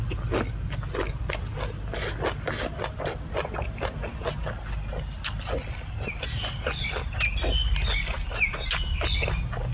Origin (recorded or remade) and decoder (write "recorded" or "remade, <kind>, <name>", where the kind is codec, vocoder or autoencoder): recorded